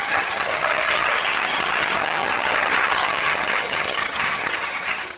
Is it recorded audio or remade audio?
remade